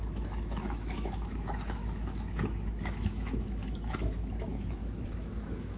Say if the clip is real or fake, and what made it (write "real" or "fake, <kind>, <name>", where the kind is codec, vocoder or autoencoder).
fake, autoencoder, DAC-VAE